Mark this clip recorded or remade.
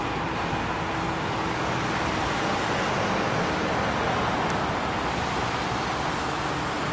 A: recorded